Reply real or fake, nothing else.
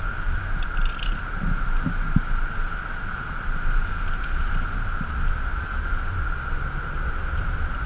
real